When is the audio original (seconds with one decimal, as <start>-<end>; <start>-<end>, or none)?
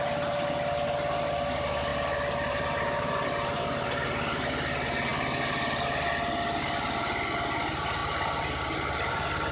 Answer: 0.0-9.5